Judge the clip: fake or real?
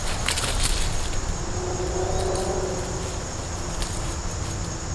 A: real